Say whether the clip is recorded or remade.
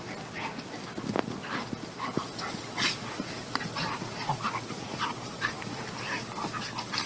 recorded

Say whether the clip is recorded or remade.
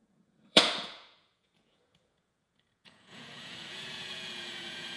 remade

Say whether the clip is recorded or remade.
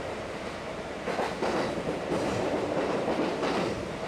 remade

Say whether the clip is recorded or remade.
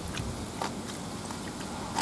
recorded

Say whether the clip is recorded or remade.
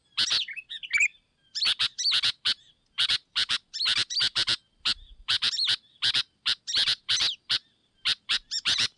remade